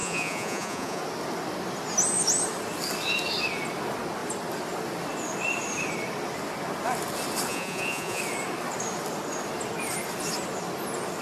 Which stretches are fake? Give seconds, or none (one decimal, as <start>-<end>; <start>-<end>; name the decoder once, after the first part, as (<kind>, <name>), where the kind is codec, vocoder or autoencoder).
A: 0.0-1.0 (vocoder, Vocos); 7.5-8.2